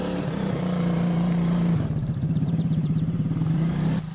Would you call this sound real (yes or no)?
no